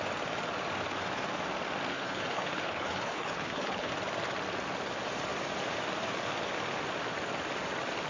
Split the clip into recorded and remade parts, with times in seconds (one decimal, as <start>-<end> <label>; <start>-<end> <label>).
0.0-1.9 recorded; 1.9-3.9 remade; 3.9-8.1 recorded